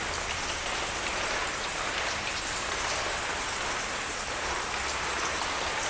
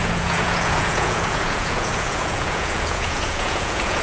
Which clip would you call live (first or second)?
first